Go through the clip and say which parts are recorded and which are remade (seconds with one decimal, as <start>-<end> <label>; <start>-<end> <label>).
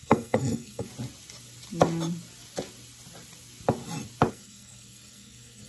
0.0-0.9 remade; 0.9-4.3 recorded; 4.3-5.7 remade